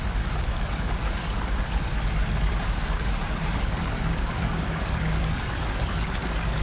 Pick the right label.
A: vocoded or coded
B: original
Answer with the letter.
A